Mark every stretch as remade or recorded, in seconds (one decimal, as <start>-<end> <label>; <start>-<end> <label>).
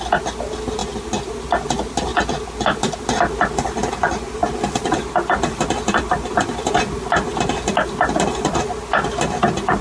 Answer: 0.0-4.4 recorded; 4.4-6.8 remade; 6.8-9.8 recorded